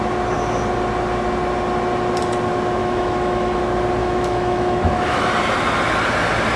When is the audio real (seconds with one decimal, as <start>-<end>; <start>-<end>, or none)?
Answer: 0.0-2.8; 3.6-4.0; 5.3-6.6